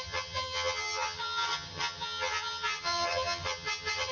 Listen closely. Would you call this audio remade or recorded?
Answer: remade